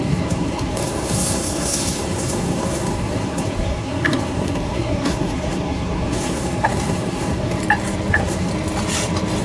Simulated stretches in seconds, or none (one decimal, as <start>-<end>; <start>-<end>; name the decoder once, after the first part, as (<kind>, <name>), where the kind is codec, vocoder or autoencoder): 0.0-7.6 (codec, SNAC); 8.1-8.5